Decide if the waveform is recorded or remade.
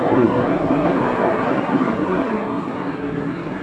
remade